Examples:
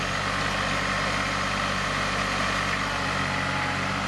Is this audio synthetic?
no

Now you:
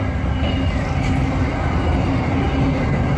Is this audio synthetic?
no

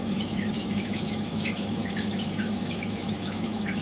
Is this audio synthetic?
yes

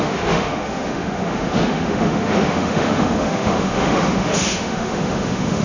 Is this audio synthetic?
yes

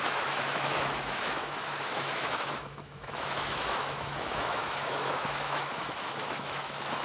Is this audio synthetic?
yes